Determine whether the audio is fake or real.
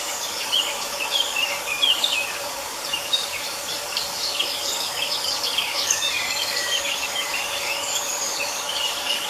fake